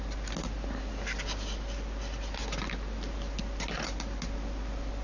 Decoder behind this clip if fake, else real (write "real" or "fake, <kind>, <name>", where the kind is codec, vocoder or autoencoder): real